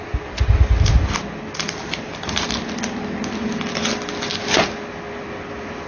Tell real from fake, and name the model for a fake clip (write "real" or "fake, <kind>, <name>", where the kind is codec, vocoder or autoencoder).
real